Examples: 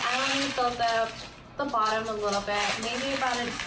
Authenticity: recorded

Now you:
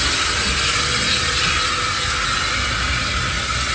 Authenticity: recorded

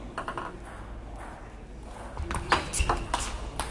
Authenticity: recorded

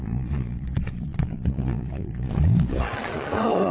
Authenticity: remade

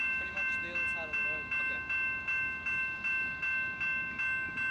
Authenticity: recorded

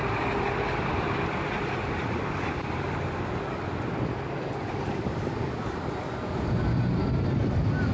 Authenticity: recorded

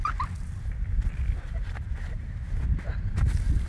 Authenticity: recorded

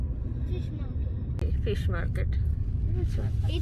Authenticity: recorded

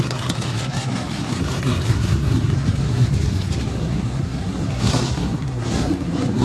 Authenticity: remade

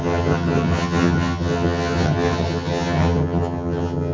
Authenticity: remade